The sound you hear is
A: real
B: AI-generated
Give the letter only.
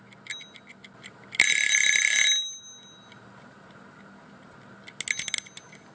A